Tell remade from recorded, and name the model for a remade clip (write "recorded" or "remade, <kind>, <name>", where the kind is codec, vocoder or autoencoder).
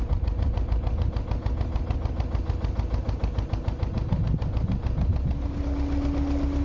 recorded